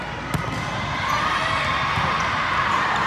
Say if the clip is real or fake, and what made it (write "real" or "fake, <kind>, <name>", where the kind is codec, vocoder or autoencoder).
real